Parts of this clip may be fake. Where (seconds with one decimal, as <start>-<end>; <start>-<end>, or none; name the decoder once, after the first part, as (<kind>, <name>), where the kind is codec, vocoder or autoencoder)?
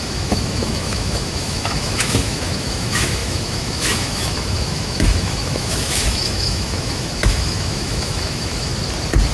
0.0-8.7 (autoencoder, DAC-VAE)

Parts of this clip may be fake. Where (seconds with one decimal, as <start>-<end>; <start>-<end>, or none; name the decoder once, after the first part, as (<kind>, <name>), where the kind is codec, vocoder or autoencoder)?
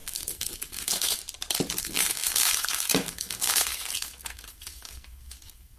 0.0-1.2 (codec, SNAC); 1.8-5.8